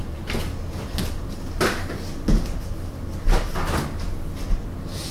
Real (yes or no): yes